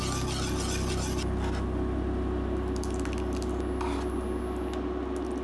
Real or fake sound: real